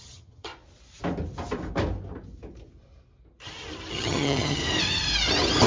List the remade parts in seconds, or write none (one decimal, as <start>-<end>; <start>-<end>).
0.0-0.5; 3.9-4.6